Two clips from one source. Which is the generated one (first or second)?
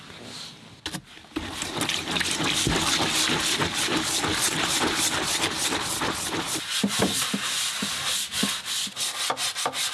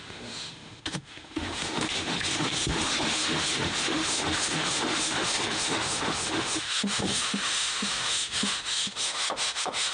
second